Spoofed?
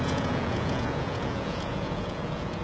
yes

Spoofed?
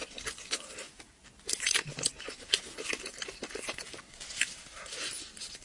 no